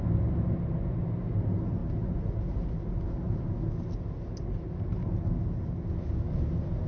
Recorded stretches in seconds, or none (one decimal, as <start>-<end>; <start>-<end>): 0.0-6.9